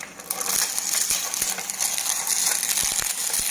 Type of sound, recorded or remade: recorded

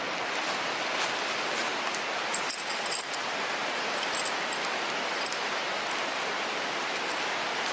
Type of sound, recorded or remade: recorded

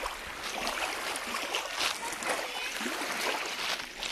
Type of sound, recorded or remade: recorded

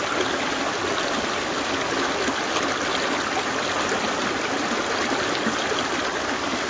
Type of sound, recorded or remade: recorded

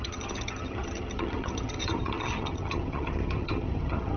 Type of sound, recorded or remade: remade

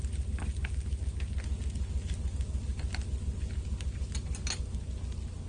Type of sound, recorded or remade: recorded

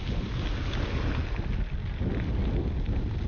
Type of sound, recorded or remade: recorded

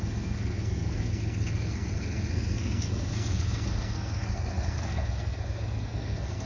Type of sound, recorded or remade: remade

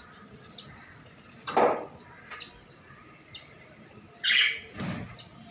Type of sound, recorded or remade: recorded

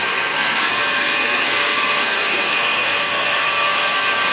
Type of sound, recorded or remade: remade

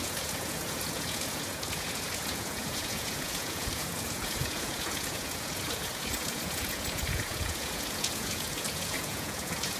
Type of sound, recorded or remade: remade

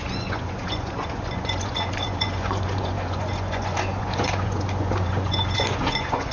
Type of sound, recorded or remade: remade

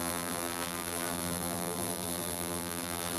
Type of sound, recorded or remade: remade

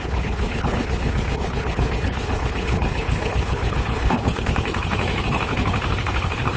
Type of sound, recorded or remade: remade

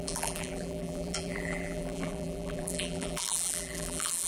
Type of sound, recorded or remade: remade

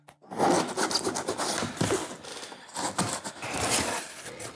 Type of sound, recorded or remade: recorded